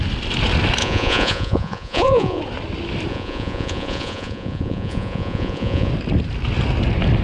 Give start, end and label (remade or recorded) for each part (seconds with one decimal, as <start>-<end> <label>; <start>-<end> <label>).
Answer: 0.0-0.8 recorded; 0.8-2.4 remade; 2.4-3.1 recorded; 3.1-5.9 remade; 5.9-7.2 recorded